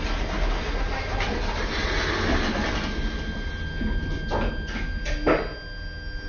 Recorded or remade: recorded